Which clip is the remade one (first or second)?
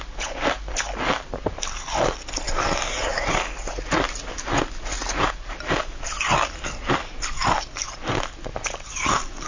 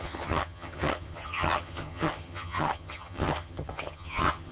second